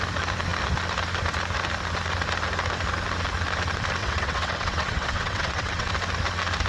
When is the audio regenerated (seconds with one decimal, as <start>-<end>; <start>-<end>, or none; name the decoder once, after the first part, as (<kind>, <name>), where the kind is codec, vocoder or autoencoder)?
4.0-5.9 (vocoder, WaveNeXt)